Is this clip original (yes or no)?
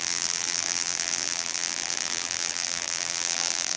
no